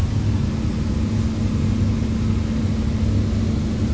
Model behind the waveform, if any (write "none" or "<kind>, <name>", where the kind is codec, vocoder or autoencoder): none